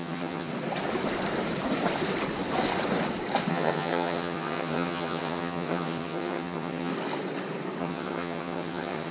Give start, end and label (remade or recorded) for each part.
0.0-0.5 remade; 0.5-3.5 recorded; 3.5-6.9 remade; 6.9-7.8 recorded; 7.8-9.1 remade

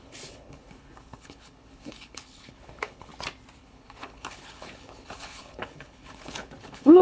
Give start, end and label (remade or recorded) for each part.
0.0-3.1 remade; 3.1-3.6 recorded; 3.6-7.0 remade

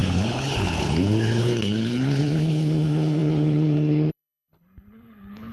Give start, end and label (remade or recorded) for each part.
0.0-5.5 remade

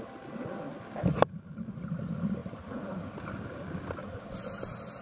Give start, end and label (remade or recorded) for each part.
0.0-5.0 recorded

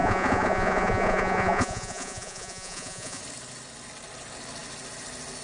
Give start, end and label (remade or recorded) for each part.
0.0-3.2 remade; 3.2-5.4 recorded

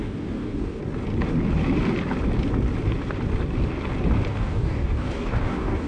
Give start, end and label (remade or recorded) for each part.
0.0-0.8 remade; 0.8-4.3 recorded; 4.3-5.9 remade

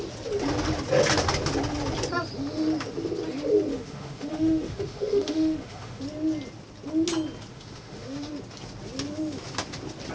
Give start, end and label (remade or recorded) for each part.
0.0-3.7 recorded; 3.7-6.0 remade; 6.0-7.5 recorded; 7.5-8.3 remade; 8.3-10.1 recorded

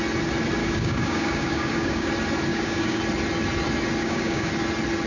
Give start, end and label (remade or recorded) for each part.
0.0-0.6 recorded; 0.6-2.1 remade; 2.1-2.5 recorded; 2.5-3.0 remade; 3.0-4.0 recorded; 4.0-4.5 remade; 4.5-5.1 recorded